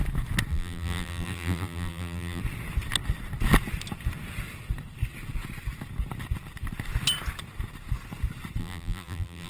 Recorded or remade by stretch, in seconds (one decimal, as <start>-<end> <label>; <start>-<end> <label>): 0.0-0.5 recorded; 0.5-2.4 remade; 2.4-8.6 recorded; 8.6-9.5 remade